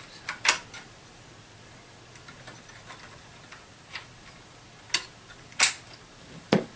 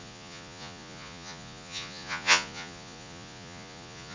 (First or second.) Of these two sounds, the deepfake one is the second